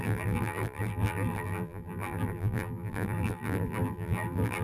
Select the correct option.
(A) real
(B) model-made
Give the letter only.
B